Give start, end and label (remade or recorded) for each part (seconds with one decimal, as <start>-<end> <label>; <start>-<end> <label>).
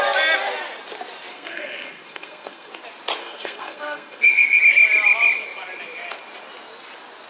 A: 0.0-1.3 recorded; 1.3-2.7 remade; 2.7-3.2 recorded; 3.2-4.6 remade; 4.6-7.3 recorded